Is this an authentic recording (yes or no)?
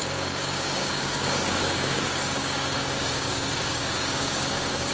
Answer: no